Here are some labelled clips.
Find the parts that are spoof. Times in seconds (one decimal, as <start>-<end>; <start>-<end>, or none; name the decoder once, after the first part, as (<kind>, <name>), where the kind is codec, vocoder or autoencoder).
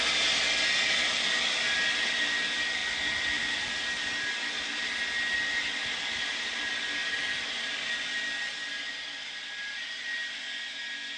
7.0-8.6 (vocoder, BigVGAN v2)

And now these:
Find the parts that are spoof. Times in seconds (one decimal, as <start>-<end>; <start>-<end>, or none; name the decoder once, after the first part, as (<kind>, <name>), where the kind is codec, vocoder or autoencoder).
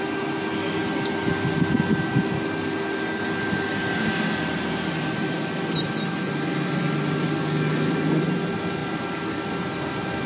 none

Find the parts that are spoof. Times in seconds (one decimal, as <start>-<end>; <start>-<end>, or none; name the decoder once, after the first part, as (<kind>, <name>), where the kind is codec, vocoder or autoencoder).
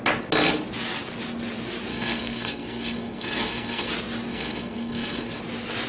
1.9-3.9 (codec, SNAC); 4.3-5.4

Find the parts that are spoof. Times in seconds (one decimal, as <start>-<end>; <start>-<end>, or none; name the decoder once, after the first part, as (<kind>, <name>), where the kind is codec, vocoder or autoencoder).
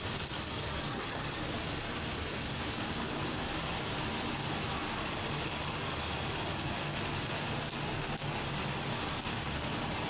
0.9-1.4 (vocoder, HiFi-GAN)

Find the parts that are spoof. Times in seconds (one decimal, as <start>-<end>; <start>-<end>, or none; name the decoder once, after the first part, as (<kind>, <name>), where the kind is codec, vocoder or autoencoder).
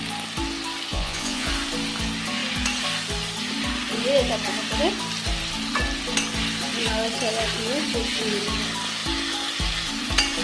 0.9-1.5 (vocoder, Vocos)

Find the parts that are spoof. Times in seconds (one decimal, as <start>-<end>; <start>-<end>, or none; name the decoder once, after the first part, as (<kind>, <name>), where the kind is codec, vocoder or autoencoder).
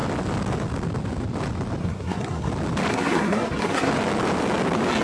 1.8-2.5 (codec, SNAC); 2.9-3.9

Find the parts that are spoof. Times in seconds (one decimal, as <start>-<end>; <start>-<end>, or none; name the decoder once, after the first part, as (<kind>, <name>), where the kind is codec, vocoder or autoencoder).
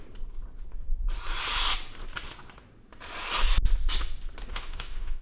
4.5-5.2 (autoencoder, DAC-VAE)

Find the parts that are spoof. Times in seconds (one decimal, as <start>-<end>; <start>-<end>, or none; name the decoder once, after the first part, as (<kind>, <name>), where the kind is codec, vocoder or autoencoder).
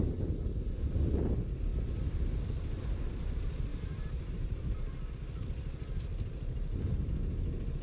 3.7-5.1 (vocoder, BigVGAN v2)